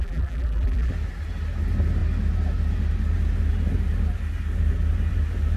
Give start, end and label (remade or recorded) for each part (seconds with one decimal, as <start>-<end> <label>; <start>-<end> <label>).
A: 0.0-0.9 remade; 0.9-5.6 recorded